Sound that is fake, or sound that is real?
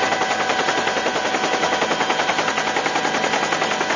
real